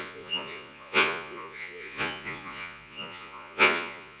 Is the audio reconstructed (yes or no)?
yes